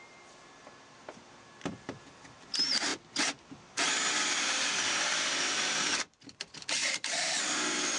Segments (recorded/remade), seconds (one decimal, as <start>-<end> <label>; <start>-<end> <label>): 0.0-8.0 remade